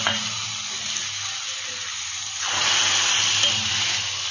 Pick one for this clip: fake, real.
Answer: real